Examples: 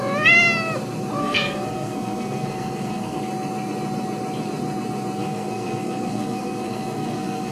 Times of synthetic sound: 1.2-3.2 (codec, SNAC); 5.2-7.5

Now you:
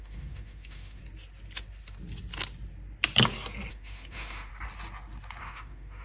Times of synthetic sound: 0.0-1.0 (autoencoder, DAC-VAE); 3.7-4.5; 5.4-6.0

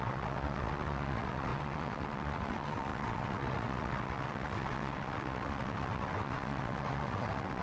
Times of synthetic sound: 0.0-7.6 (vocoder, WaveNeXt)

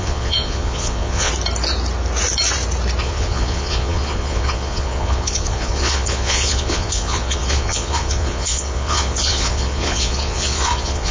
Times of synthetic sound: 0.0-1.3 (vocoder, Vocos); 3.0-11.1

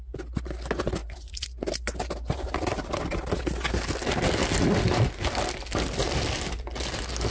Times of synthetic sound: none

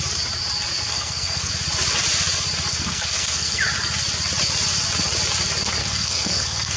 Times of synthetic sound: 0.9-1.5 (codec, SNAC); 2.7-3.6; 5.8-6.8

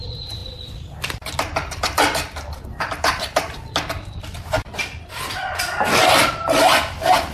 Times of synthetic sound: none

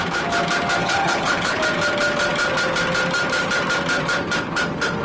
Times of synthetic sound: 0.8-1.6 (codec, HILCodec)